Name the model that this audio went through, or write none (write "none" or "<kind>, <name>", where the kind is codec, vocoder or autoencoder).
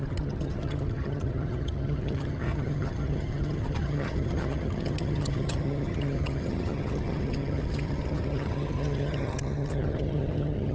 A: vocoder, HiFi-GAN